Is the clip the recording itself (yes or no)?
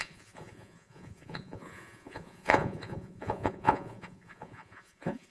no